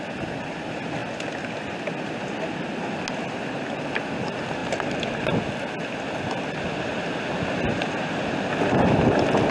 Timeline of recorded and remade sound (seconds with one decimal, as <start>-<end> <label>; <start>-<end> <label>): 0.0-9.5 recorded